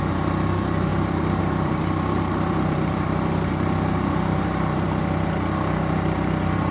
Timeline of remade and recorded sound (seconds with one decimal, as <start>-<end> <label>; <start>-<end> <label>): 0.0-6.7 remade